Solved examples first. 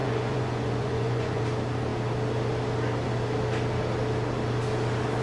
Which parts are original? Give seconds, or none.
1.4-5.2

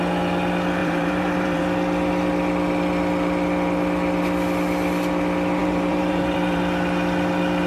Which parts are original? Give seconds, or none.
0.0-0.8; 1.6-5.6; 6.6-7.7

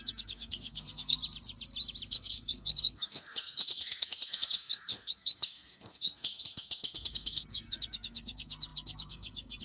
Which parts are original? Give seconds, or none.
1.2-2.1

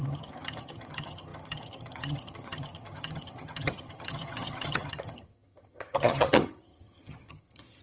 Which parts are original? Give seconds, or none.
none